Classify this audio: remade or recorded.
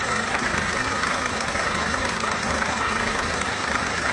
remade